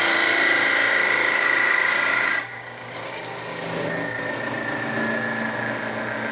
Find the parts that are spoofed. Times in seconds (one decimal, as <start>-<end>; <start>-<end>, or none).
1.2-4.2